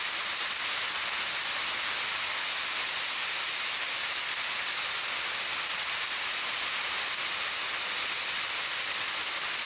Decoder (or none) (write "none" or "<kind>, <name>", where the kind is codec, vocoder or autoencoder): none